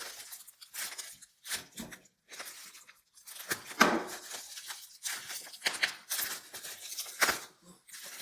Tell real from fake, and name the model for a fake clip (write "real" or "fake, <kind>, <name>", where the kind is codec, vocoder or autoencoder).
real